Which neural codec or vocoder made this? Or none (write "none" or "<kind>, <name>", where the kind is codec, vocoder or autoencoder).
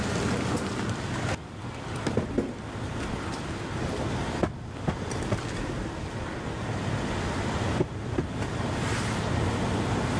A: none